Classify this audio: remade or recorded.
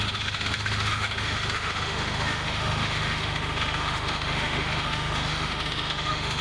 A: remade